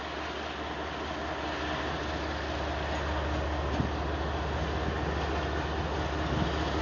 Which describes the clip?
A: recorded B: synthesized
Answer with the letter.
A